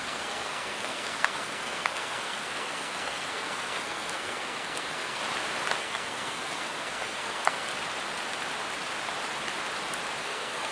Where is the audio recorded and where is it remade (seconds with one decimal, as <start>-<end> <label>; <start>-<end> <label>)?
0.0-5.2 remade; 5.2-5.8 recorded; 5.8-7.7 remade; 7.7-10.2 recorded; 10.2-10.7 remade